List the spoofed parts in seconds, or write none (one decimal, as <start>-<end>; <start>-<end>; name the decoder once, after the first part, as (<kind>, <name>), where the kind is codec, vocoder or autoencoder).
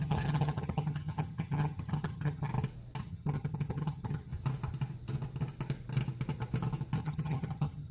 0.0-2.5 (vocoder, HiFi-GAN); 3.0-4.3; 7.0-7.9